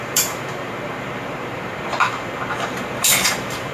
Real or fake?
fake